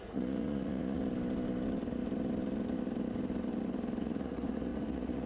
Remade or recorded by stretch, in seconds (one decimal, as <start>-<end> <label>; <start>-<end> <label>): 0.0-1.0 remade; 1.0-4.0 recorded; 4.0-5.3 remade